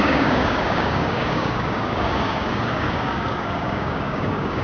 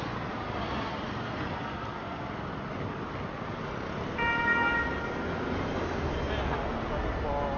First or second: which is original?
second